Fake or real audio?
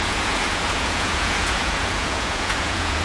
fake